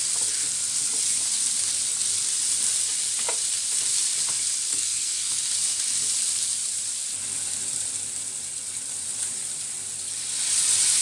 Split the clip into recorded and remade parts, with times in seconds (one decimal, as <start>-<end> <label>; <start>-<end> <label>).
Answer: 0.0-4.7 recorded; 4.7-5.4 remade; 5.4-11.0 recorded